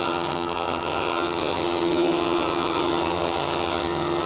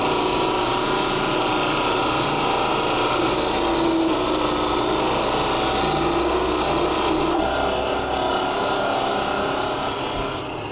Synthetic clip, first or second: first